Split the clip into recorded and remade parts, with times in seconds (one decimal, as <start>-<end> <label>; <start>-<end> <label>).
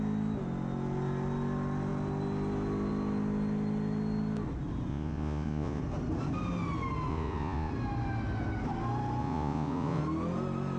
0.0-4.9 recorded; 4.9-5.8 remade; 5.8-7.1 recorded; 7.1-7.7 remade; 7.7-9.2 recorded; 9.2-10.0 remade; 10.0-10.8 recorded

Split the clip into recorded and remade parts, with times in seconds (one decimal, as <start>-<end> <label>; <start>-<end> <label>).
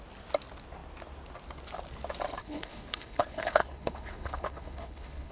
0.0-2.4 recorded; 2.4-5.3 remade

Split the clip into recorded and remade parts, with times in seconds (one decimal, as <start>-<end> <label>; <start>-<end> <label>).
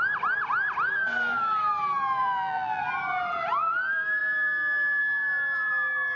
0.0-2.2 recorded; 2.2-2.8 remade; 2.8-6.2 recorded